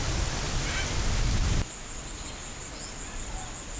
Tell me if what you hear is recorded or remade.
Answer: recorded